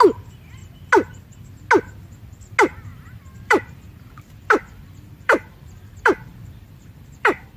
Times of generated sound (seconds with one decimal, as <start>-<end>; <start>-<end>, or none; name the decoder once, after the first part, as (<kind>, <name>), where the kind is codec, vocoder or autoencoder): 2.9-7.6 (vocoder, BigVGAN v2)